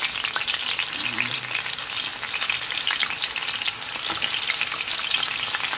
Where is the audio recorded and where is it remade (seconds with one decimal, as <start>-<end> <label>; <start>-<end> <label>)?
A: 0.0-5.8 recorded